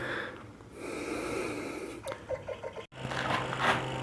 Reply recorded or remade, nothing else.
recorded